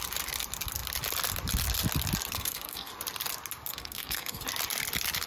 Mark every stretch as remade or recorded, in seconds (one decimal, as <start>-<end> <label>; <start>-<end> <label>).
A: 0.0-2.3 recorded; 2.3-2.9 remade; 2.9-3.7 recorded; 3.7-4.4 remade; 4.4-5.3 recorded